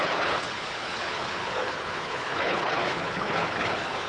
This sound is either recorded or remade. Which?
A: remade